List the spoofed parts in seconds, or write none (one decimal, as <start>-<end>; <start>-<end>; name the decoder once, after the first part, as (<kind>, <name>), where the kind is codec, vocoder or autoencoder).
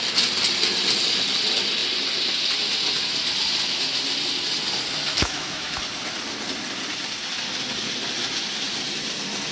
5.1-5.8 (autoencoder, DAC-VAE)